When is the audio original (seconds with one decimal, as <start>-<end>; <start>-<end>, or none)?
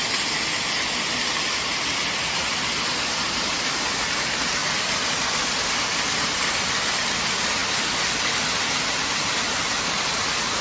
0.0-10.6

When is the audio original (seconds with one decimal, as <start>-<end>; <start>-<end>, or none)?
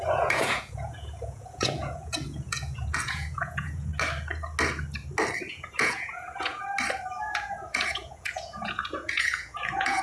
3.9-5.5; 6.6-7.2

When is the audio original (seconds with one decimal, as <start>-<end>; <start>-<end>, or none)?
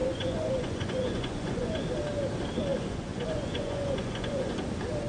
1.8-2.7; 4.6-5.1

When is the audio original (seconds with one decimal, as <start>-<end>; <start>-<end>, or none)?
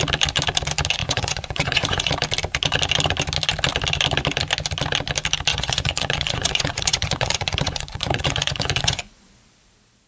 0.0-1.0; 2.1-5.5; 9.3-10.1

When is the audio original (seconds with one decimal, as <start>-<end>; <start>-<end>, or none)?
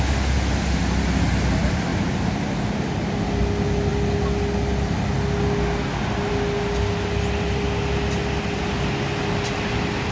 0.0-10.1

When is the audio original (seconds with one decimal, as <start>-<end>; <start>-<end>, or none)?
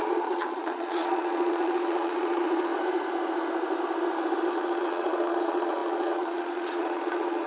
2.7-4.5